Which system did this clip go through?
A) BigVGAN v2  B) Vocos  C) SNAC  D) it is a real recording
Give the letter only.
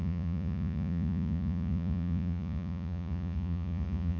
B